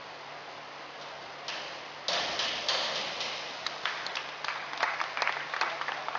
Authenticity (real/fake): real